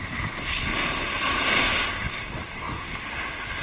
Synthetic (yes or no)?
no